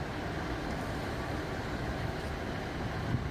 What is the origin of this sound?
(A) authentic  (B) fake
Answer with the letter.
A